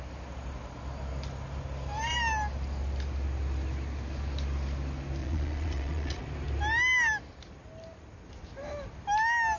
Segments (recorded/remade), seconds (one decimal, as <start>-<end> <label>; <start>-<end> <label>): 0.0-5.2 recorded; 5.2-6.2 remade; 6.2-9.6 recorded